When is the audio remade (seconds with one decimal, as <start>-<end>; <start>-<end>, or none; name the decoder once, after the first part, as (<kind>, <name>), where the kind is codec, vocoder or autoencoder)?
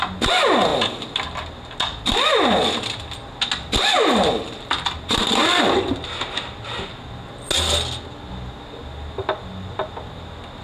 none